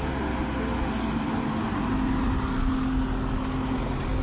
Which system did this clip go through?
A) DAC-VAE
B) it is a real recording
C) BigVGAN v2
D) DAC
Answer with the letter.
B